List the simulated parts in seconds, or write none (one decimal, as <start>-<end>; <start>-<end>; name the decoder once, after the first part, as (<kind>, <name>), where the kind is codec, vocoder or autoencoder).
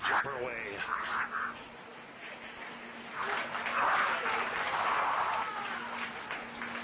none